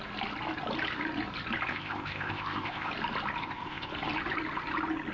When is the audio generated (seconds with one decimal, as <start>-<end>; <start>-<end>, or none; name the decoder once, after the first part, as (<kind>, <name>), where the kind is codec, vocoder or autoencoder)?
1.7-2.9 (codec, ZipCodec); 3.4-3.9